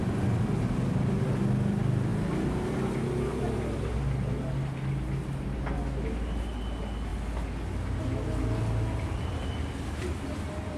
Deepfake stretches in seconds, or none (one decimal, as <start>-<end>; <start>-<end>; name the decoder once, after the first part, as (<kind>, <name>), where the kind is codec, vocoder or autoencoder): none